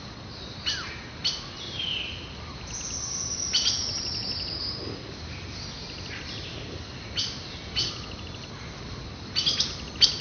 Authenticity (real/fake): real